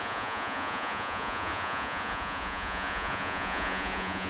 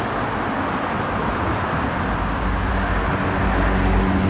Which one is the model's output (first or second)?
first